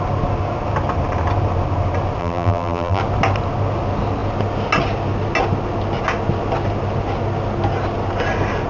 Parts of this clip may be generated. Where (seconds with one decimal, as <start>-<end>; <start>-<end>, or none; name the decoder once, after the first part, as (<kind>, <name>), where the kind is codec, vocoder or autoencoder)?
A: 2.2-3.0 (vocoder, BigVGAN v2)